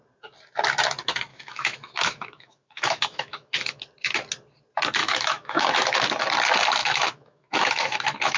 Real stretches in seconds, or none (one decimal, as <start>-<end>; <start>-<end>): 0.0-1.3; 3.8-5.0; 5.7-6.8